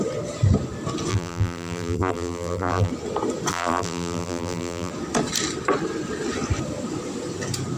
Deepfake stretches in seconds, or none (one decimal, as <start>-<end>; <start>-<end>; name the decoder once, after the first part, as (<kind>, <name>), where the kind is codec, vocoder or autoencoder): 1.1-2.9 (vocoder, BigVGAN v2); 3.5-4.9